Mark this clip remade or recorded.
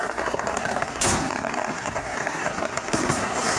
remade